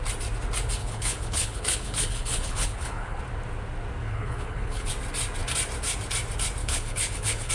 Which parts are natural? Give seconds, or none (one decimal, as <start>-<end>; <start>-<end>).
0.0-0.8; 3.2-4.0; 4.9-6.6